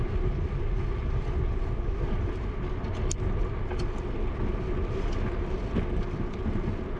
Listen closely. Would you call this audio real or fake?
real